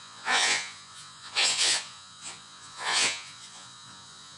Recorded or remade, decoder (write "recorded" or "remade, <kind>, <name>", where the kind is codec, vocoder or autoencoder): remade, vocoder, Vocos